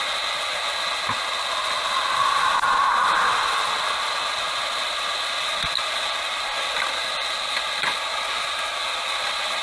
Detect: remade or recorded recorded